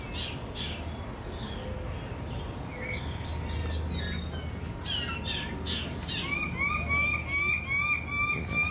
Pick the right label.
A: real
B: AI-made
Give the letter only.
A